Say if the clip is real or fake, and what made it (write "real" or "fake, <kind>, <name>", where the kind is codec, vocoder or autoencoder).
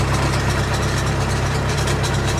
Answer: fake, vocoder, BigVGAN v2